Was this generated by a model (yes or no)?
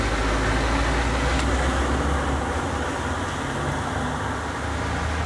no